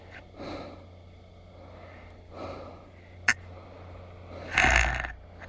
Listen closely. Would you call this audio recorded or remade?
recorded